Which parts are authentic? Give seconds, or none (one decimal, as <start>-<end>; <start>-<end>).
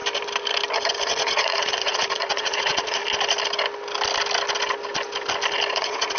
0.0-1.0; 3.0-5.7